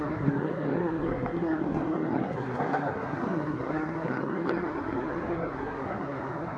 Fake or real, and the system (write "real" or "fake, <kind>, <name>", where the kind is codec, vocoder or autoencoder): fake, codec, SNAC